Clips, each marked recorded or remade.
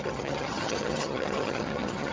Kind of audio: remade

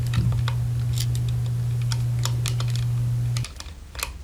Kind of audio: recorded